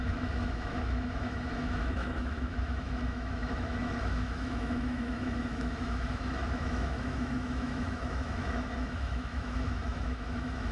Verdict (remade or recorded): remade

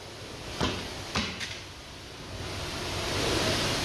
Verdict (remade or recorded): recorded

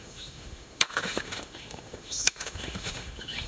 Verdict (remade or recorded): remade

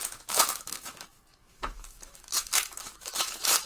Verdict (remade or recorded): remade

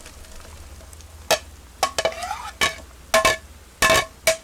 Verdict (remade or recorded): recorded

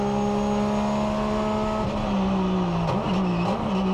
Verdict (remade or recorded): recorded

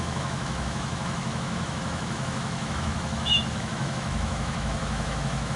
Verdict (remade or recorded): remade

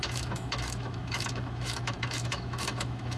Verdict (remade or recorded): remade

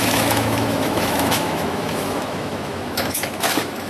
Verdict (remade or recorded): remade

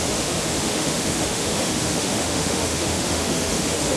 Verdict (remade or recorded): remade